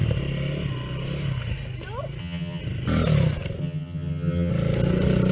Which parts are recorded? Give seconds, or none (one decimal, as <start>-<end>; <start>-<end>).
0.0-2.2; 2.6-3.6; 4.5-5.3